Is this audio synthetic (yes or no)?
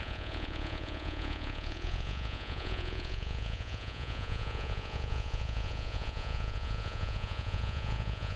yes